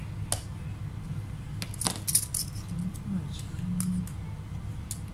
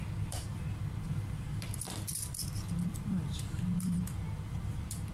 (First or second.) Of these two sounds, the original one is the first